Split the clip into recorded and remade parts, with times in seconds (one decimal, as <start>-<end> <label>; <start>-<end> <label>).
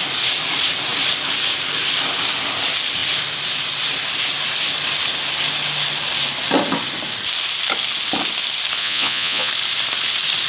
0.0-8.8 recorded; 8.8-9.5 remade; 9.5-10.5 recorded